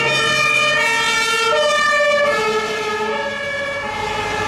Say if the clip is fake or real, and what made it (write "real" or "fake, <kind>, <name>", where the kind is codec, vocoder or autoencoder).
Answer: real